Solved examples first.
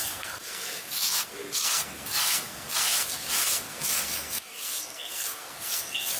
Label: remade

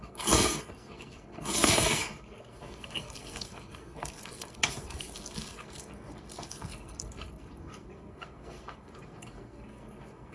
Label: remade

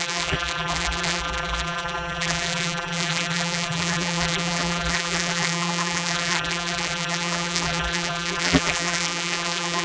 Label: remade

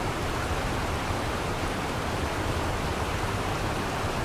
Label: remade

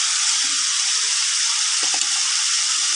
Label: recorded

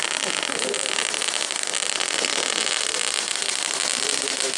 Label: recorded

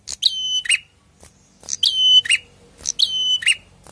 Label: recorded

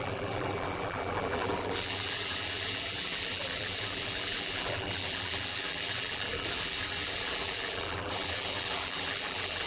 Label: remade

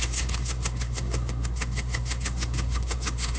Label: remade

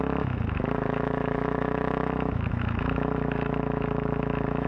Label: remade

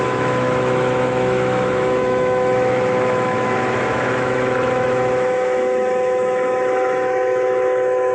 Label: remade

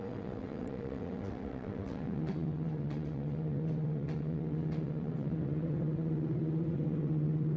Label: remade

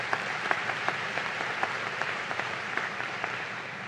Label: remade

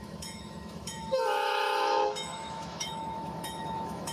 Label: remade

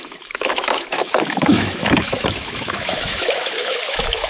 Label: remade